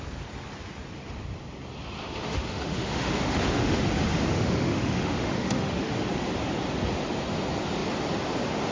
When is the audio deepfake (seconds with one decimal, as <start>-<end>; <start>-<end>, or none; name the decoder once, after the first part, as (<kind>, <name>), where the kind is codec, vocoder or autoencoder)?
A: 2.0-3.8 (autoencoder, DAC-VAE); 4.3-5.9